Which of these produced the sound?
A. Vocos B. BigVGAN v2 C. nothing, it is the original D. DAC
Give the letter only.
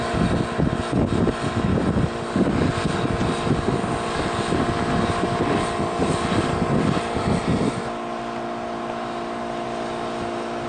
C